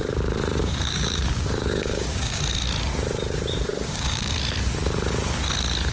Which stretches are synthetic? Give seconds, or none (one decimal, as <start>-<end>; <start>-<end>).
0.6-2.4; 3.7-4.3